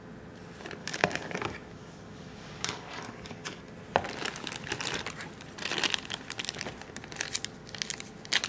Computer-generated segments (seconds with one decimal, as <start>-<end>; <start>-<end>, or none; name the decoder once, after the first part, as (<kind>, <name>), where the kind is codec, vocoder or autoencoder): 0.8-3.6 (codec, DAC)